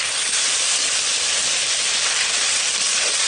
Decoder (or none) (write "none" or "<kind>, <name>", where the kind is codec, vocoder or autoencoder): none